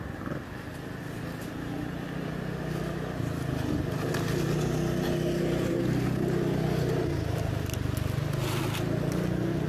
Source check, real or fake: real